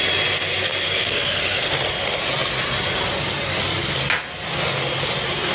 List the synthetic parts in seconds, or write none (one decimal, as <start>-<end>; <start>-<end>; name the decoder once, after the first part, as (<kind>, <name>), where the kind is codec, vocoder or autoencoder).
0.6-1.7 (codec, SNAC)